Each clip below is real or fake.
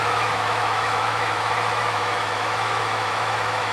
fake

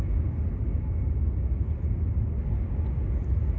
real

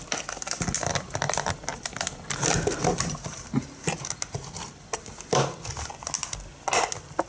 real